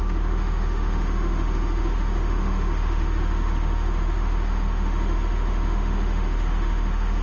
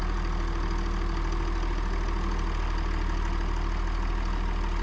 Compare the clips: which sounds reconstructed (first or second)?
first